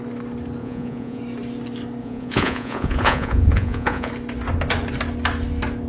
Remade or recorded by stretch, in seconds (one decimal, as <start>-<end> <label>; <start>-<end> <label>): 0.0-0.6 recorded; 0.6-1.2 remade; 1.2-2.0 recorded; 2.0-4.1 remade; 4.1-5.9 recorded